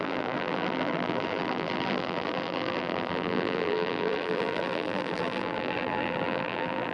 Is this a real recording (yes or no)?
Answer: no